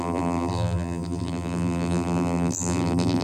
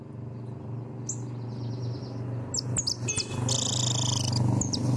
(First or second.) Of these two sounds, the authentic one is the second